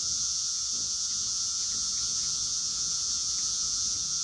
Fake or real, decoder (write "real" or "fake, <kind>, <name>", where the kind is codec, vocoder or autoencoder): fake, vocoder, Vocos